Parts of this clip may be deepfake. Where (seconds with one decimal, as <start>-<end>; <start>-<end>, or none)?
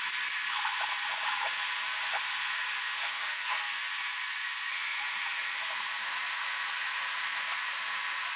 3.0-3.8